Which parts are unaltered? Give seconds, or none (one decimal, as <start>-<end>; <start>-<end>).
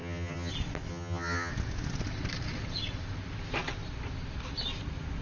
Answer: 0.5-0.9; 1.5-5.2